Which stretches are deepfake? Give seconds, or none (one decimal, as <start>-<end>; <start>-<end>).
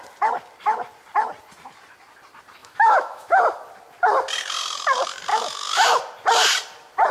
2.6-3.4; 5.3-6.0